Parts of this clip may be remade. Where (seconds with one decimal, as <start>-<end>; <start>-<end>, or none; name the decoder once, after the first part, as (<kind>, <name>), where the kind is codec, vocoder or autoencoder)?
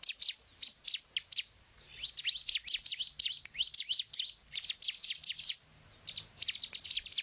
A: none